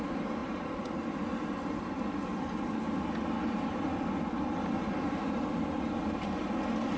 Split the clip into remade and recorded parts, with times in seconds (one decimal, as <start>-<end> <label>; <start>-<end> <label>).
0.0-7.0 recorded